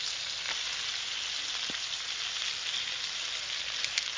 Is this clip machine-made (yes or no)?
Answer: no